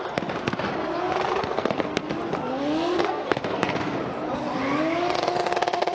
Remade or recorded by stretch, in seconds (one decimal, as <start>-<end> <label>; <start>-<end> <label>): 0.0-1.4 recorded; 1.4-2.1 remade; 2.1-3.0 recorded; 3.0-3.8 remade; 3.8-5.9 recorded